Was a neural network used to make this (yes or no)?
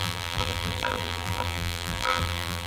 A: yes